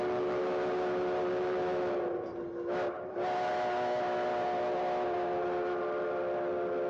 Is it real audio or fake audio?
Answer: real